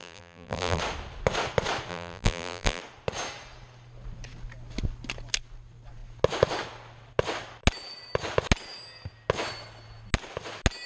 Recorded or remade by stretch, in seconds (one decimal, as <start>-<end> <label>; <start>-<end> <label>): 0.0-0.8 remade; 0.8-1.9 recorded; 1.9-2.8 remade; 2.8-10.9 recorded